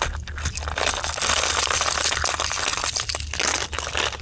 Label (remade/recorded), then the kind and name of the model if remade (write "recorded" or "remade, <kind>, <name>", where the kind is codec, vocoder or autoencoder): recorded